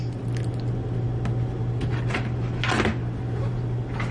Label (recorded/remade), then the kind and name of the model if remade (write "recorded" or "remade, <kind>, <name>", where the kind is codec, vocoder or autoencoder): recorded